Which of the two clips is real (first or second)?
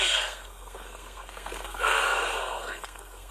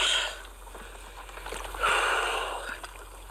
second